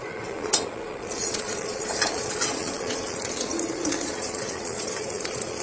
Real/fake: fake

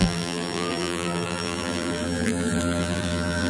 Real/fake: fake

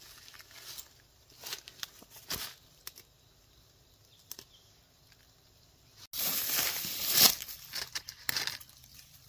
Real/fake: real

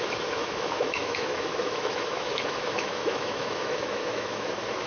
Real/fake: fake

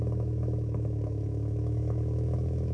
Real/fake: fake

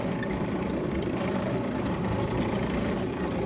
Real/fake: fake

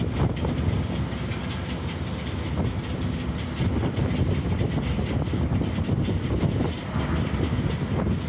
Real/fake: real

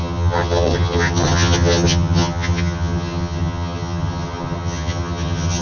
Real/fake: fake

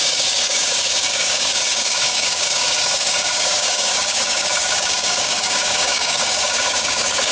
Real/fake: fake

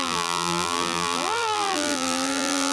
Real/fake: fake